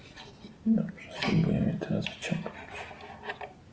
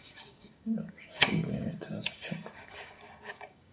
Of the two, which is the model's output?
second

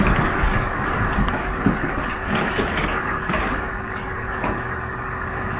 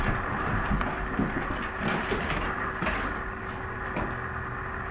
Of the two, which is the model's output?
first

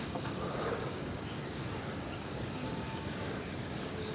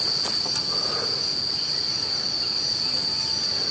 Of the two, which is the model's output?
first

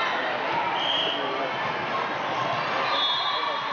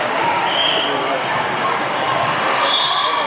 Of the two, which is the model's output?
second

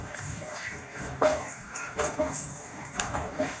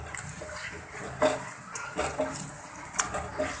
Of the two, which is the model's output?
first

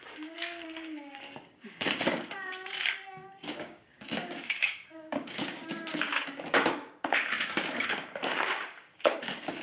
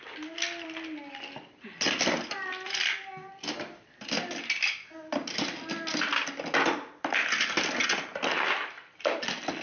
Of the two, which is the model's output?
first